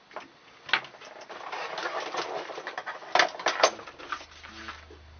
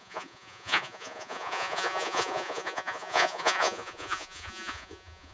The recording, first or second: first